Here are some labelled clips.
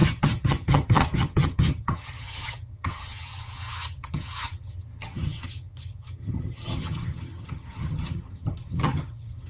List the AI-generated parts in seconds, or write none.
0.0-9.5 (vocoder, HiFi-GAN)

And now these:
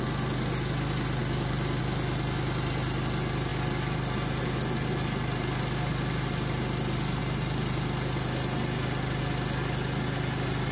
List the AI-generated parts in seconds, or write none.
none

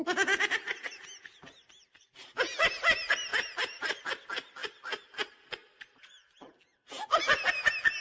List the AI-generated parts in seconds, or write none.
3.3-4.0 (vocoder, BigVGAN v2)

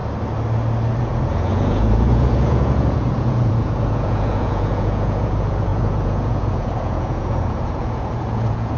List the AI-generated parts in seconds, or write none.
1.0-8.8 (vocoder, Vocos)